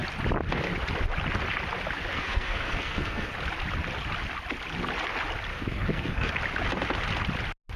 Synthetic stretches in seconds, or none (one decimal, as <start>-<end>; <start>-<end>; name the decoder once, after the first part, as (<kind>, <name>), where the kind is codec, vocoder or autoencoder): 2.1-3.3 (codec, SNAC); 5.5-6.3